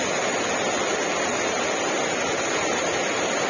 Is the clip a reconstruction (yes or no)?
no